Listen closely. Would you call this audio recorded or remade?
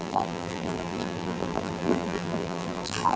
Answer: remade